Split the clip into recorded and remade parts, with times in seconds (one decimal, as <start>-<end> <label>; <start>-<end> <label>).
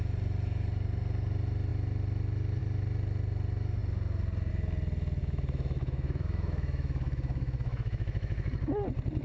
0.0-5.2 recorded; 5.2-8.5 remade; 8.5-9.2 recorded